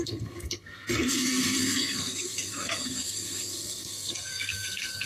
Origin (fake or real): fake